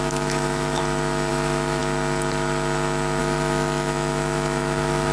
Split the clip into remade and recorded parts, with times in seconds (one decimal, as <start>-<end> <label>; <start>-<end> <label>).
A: 0.0-0.8 remade; 0.8-1.3 recorded; 1.3-1.8 remade; 1.8-3.2 recorded; 3.2-5.1 remade